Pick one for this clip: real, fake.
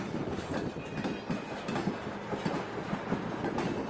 real